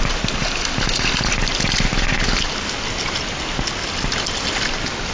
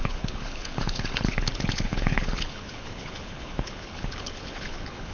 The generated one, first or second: second